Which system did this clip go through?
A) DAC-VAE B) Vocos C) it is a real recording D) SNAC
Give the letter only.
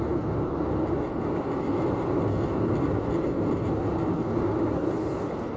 C